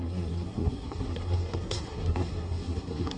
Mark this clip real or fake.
fake